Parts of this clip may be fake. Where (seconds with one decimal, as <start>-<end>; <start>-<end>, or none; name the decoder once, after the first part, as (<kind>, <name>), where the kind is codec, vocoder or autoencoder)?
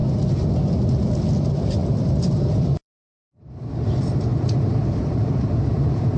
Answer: 1.0-4.3 (vocoder, BigVGAN v2); 4.8-6.2